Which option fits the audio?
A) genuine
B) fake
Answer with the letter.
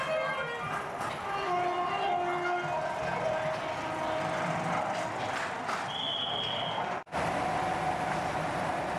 A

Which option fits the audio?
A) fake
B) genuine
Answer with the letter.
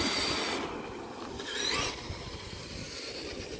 B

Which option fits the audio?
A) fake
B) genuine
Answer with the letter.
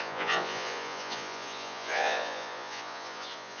A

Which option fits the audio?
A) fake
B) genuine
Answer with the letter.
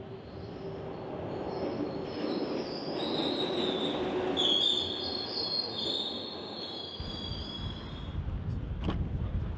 B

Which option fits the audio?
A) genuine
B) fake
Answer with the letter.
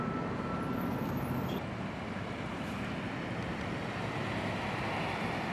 A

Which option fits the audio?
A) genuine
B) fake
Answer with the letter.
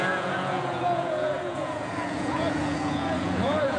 B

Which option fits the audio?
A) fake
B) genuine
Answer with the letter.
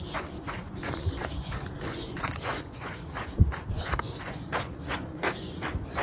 A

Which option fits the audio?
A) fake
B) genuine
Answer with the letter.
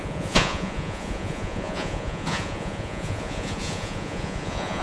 A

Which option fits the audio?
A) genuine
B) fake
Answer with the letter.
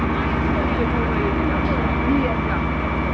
A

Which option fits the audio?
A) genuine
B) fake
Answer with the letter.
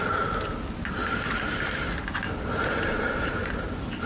A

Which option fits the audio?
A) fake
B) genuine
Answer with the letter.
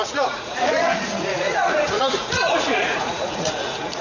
A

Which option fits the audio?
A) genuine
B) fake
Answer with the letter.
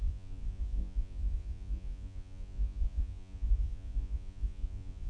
B